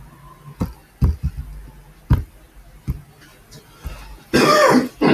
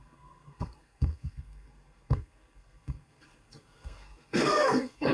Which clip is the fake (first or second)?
second